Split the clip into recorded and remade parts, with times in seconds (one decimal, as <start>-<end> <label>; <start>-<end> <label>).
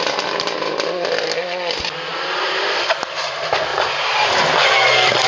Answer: 0.0-5.3 recorded